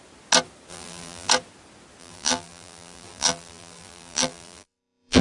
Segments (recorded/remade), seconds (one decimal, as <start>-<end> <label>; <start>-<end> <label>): 0.0-0.7 recorded; 0.7-1.3 remade; 1.3-2.0 recorded; 2.0-5.2 remade